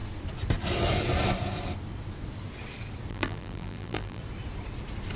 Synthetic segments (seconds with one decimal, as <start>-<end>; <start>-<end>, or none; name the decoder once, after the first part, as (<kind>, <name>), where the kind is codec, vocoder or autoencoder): 3.1-4.2 (vocoder, BigVGAN v2)